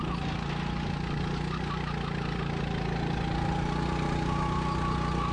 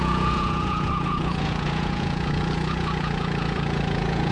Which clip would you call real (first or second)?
first